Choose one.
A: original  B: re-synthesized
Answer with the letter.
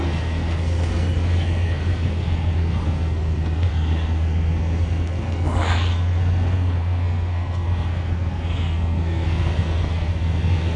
B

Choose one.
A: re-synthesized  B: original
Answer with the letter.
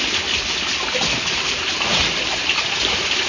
B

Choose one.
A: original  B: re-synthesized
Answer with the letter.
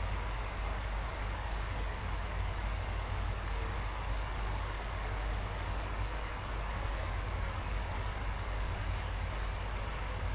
B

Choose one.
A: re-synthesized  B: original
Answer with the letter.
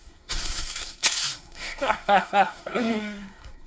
A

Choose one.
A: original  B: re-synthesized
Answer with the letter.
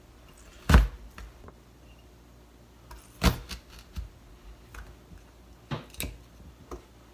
A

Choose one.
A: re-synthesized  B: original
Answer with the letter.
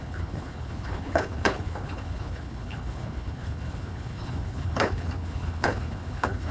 A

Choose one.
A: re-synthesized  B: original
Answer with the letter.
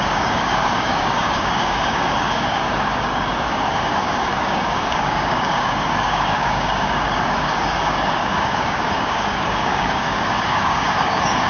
A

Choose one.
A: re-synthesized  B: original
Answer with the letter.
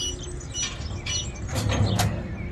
B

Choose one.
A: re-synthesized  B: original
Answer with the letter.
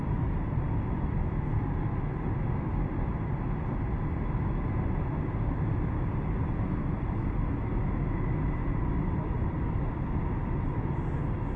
B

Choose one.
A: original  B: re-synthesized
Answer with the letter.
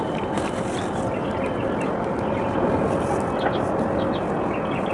A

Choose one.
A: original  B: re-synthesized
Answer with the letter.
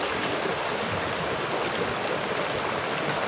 A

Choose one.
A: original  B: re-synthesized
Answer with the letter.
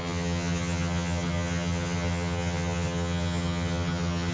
B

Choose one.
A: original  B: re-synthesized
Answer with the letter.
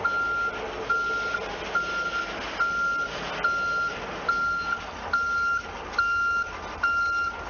A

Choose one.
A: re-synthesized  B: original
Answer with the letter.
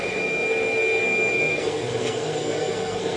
A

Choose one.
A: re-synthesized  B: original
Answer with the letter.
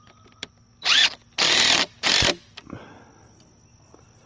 B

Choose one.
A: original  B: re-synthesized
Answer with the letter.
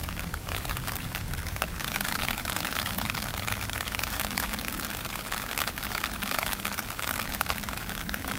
B